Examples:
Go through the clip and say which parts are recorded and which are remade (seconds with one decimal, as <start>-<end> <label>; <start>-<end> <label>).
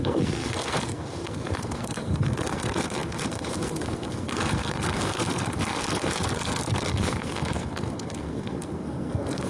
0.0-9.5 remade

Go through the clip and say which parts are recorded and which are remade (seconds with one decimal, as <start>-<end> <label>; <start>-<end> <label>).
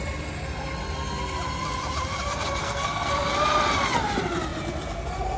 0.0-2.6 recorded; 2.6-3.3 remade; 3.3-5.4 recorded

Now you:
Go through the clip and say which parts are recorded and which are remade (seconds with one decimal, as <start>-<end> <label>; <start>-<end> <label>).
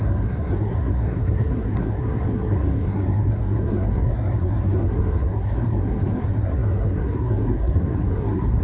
0.0-8.6 remade